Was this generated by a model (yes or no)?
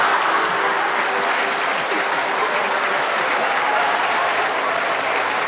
no